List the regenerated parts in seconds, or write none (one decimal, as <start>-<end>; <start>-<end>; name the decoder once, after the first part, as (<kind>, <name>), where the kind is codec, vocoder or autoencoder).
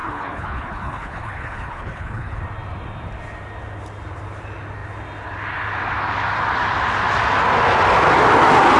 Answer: 0.0-2.4 (codec, HILCodec)